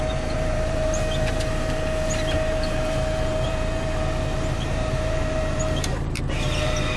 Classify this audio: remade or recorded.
remade